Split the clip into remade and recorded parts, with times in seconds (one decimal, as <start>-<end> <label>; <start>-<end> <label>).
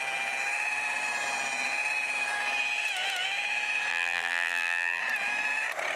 0.0-3.9 recorded; 3.9-5.0 remade; 5.0-6.0 recorded